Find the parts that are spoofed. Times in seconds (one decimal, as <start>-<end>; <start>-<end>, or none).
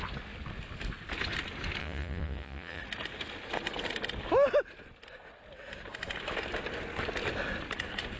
1.8-2.8